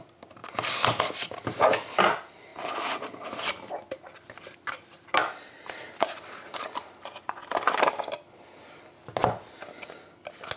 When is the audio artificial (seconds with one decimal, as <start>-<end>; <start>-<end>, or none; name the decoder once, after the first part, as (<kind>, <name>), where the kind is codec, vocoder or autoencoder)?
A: 0.0-0.4 (vocoder, BigVGAN v2); 1.0-2.5; 4.0-5.2; 5.7-7.4; 8.0-10.6